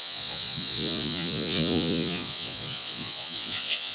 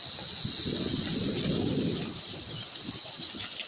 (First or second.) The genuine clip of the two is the second